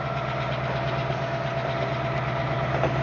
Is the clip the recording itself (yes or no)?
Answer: yes